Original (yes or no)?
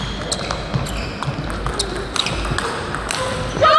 yes